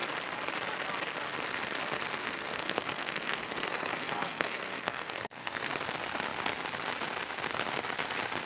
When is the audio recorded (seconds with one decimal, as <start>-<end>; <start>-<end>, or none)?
0.0-2.2; 5.7-8.5